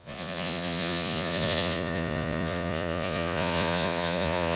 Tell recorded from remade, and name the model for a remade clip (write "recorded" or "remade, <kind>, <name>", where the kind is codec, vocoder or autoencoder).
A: remade, vocoder, Vocos